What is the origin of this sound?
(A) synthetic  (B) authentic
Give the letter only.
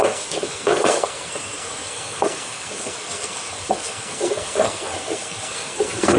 A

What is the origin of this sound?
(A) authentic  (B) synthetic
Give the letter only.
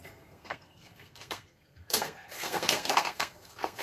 B